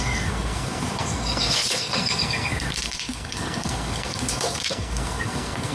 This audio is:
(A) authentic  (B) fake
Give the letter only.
B